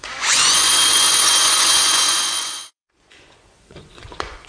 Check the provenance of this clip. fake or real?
fake